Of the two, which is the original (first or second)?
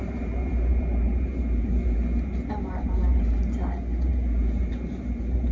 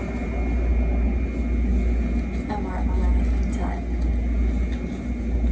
second